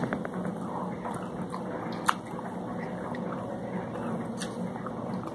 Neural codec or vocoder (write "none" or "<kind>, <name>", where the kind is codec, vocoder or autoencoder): none